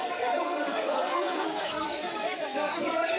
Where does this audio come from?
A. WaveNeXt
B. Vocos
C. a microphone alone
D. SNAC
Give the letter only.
D